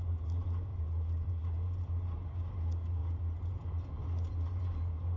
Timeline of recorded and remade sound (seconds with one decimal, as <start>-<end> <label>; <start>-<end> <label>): 0.0-0.7 recorded; 0.7-1.3 remade; 1.3-5.2 recorded

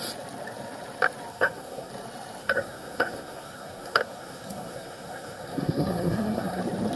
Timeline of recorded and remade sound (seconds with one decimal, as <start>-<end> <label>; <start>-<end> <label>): 0.0-1.3 recorded; 1.3-1.9 remade; 1.9-2.4 recorded; 2.4-6.6 remade; 6.6-7.0 recorded

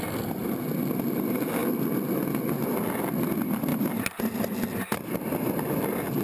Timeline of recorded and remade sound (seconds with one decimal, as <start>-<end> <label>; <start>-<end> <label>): 0.0-6.2 recorded

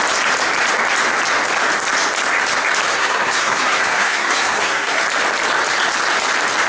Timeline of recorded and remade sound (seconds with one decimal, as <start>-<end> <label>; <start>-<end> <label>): 0.0-2.9 recorded; 2.9-5.0 remade; 5.0-6.7 recorded

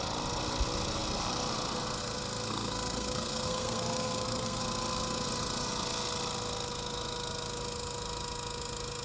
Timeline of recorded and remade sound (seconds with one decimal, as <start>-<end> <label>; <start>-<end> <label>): 0.0-2.5 recorded; 2.5-4.6 remade; 4.6-9.0 recorded

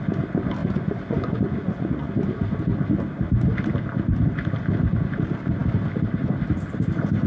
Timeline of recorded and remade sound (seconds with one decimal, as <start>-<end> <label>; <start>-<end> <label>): 0.0-0.6 recorded; 0.6-2.1 remade; 2.1-7.3 recorded

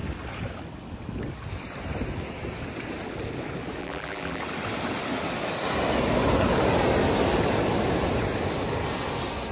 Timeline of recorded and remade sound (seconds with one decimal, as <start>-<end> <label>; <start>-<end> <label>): 0.0-3.8 recorded; 3.8-4.4 remade; 4.4-9.5 recorded

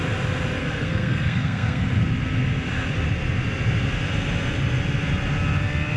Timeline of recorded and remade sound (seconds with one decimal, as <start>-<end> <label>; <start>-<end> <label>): 0.0-0.6 recorded; 0.6-1.8 remade; 1.8-6.0 recorded